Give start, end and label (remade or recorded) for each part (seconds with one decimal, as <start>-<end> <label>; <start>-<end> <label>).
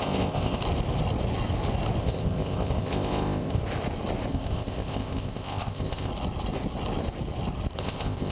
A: 0.0-0.6 remade; 0.6-2.0 recorded; 2.0-3.6 remade; 3.6-4.3 recorded; 4.3-6.1 remade; 6.1-7.8 recorded; 7.8-8.3 remade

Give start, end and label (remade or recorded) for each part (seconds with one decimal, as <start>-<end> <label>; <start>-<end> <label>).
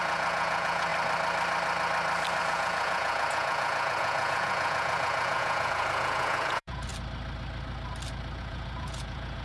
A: 0.0-0.9 remade; 0.9-2.4 recorded; 2.4-6.9 remade; 6.9-8.4 recorded; 8.4-9.4 remade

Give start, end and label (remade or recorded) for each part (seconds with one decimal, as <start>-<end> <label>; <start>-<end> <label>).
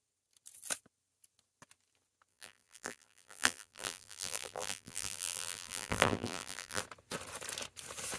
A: 0.0-2.3 recorded; 2.3-6.8 remade; 6.8-8.2 recorded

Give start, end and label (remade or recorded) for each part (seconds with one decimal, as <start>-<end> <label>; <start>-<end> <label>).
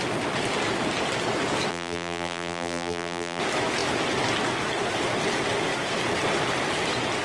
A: 0.0-1.7 recorded; 1.7-3.4 remade; 3.4-7.2 recorded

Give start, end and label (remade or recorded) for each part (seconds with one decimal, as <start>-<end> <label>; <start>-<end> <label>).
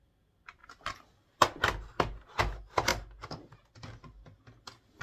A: 0.0-5.0 recorded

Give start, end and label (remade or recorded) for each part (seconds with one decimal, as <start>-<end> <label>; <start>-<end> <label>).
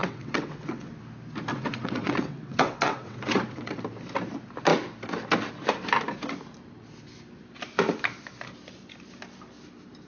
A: 0.0-0.9 remade; 0.9-1.5 recorded; 1.5-3.8 remade; 3.8-10.1 recorded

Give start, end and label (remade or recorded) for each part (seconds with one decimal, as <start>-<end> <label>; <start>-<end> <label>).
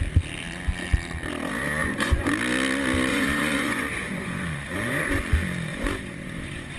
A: 0.0-1.8 recorded; 1.8-2.3 remade; 2.3-3.1 recorded; 3.1-5.2 remade; 5.2-5.7 recorded; 5.7-6.8 remade